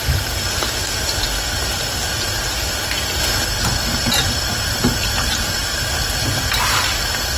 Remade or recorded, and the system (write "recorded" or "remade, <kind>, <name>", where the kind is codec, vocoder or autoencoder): recorded